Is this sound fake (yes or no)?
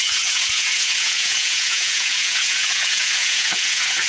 yes